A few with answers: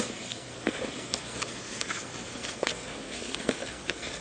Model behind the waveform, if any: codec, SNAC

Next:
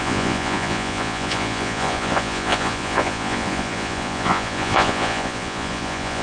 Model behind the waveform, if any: vocoder, Vocos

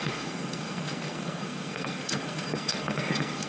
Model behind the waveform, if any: codec, SNAC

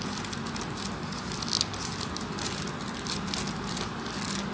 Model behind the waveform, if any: none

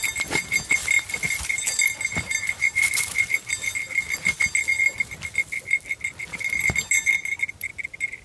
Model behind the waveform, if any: none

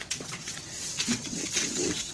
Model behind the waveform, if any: vocoder, WaveNeXt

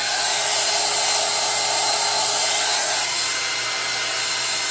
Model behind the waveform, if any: none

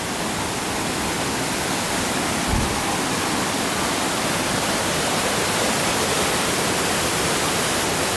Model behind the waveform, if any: none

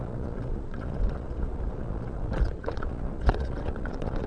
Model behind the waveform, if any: vocoder, Vocos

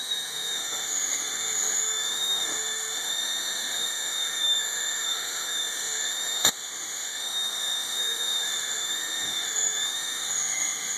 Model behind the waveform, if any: autoencoder, DAC-VAE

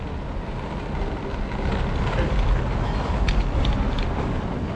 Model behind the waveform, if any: none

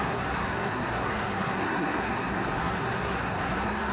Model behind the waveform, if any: codec, SNAC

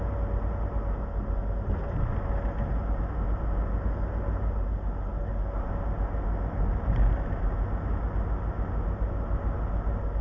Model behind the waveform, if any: none